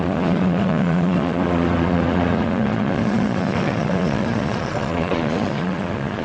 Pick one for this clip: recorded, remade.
remade